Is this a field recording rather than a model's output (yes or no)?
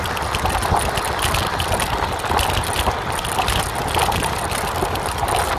yes